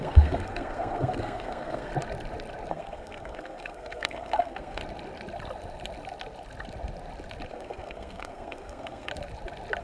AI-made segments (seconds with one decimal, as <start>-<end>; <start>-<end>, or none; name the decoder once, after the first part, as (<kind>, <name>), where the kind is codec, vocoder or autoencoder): 0.0-1.9 (codec, SNAC); 2.7-4.8; 7.5-9.1